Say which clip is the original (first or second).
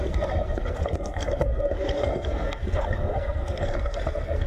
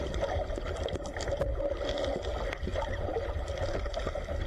second